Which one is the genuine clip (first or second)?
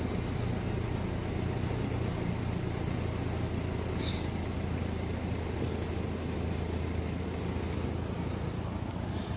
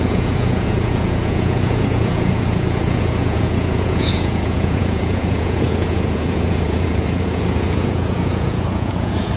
first